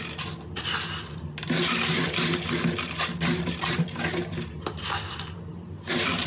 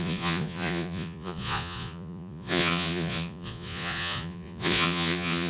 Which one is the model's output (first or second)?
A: second